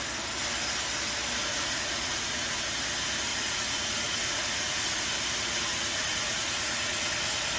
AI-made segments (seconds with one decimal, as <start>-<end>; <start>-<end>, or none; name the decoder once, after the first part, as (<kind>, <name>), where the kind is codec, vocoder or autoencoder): 1.5-2.6 (vocoder, Vocos); 3.3-5.0; 5.7-7.1